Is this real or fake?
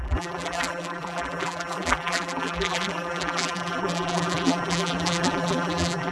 fake